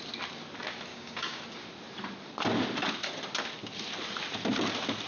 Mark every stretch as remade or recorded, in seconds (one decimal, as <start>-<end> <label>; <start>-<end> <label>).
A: 0.0-0.9 recorded; 0.9-1.4 remade; 1.4-5.1 recorded